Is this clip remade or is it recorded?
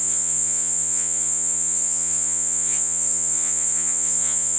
remade